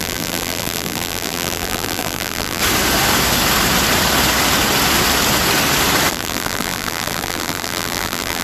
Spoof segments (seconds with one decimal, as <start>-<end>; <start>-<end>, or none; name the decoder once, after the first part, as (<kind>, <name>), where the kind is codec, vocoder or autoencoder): 0.0-2.6 (vocoder, BigVGAN v2); 6.1-8.4

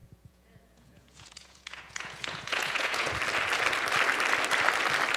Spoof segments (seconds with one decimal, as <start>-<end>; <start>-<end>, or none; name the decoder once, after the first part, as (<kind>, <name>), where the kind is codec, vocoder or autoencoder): 0.0-3.1 (vocoder, Vocos)

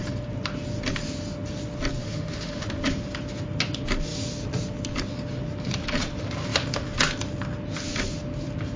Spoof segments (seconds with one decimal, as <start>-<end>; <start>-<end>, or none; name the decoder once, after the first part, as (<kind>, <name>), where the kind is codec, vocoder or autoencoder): 2.0-2.8 (autoencoder, DAC-VAE)

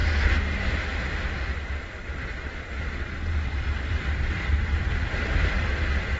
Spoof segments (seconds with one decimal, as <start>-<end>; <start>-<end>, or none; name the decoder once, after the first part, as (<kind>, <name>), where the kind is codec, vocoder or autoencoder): 2.0-5.7 (vocoder, BigVGAN v2)

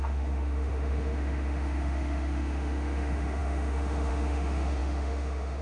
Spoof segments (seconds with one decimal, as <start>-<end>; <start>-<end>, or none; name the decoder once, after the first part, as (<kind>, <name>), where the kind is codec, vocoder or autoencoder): 0.0-5.6 (autoencoder, DAC-VAE)